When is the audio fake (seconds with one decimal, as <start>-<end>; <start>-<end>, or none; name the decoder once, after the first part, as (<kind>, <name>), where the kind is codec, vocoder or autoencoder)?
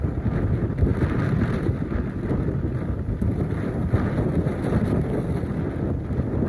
0.9-3.4 (vocoder, BigVGAN v2); 4.5-5.6